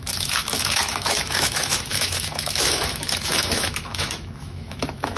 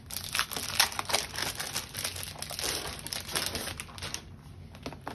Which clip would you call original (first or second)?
second